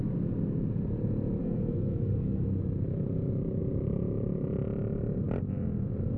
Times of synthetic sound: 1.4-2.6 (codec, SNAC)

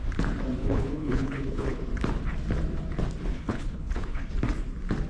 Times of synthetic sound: 0.6-1.8 (codec, HILCodec); 3.3-4.3

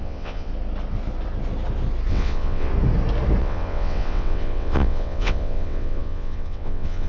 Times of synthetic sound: 0.0-0.5 (vocoder, WaveNeXt); 2.1-2.7; 3.4-7.1